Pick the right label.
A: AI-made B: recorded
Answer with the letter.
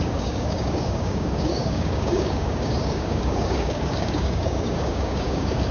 A